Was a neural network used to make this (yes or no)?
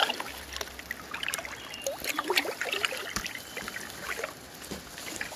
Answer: no